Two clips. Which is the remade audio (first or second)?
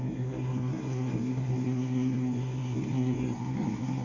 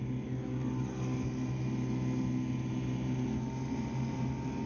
first